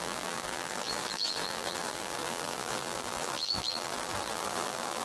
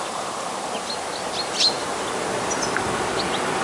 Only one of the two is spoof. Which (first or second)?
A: first